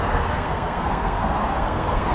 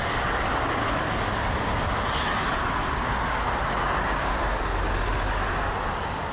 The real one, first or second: second